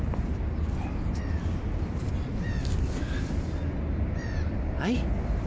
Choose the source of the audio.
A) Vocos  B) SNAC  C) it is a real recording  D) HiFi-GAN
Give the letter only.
C